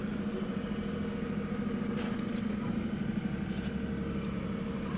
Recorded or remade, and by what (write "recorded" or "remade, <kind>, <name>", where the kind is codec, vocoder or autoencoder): recorded